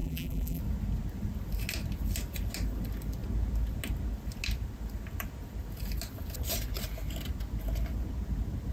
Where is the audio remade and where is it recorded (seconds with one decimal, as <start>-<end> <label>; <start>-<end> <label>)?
0.0-0.6 remade; 0.6-8.7 recorded